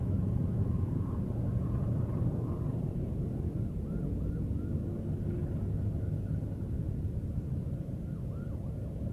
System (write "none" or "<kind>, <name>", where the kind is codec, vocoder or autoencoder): none